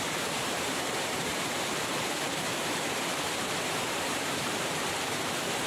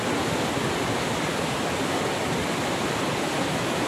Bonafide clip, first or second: second